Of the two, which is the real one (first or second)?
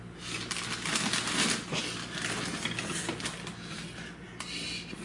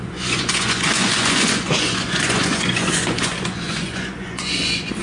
first